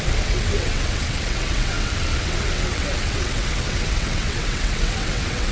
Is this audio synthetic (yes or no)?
yes